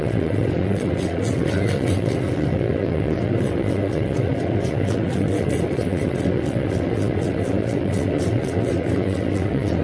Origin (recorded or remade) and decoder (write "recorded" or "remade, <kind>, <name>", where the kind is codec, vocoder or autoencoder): remade, vocoder, WaveNeXt